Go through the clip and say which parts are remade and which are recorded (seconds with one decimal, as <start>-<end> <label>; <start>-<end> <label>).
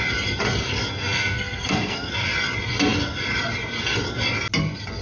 0.0-0.9 recorded; 0.9-2.1 remade; 2.1-5.0 recorded